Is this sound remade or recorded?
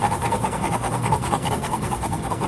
remade